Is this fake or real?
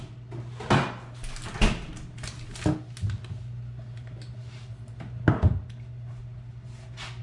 real